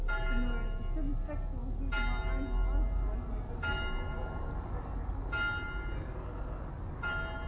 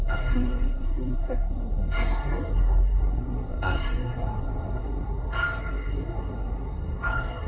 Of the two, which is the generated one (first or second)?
second